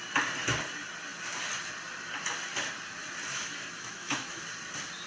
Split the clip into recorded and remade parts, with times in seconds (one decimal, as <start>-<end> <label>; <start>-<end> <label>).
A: 0.0-3.3 recorded; 3.3-4.4 remade; 4.4-5.1 recorded